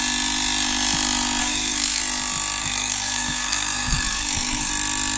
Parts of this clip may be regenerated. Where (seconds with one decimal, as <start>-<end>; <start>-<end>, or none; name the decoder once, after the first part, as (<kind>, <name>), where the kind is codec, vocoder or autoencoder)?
1.4-2.0 (codec, SNAC); 2.6-4.7